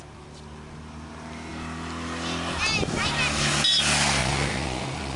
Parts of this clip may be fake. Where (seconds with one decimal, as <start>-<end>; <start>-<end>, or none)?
4.2-5.2